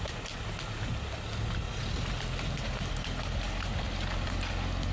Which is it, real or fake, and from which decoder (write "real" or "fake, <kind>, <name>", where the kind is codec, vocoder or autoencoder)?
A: real